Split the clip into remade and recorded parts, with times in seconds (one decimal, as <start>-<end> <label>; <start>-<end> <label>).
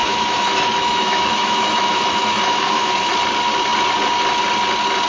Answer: 0.0-3.1 remade; 3.1-5.1 recorded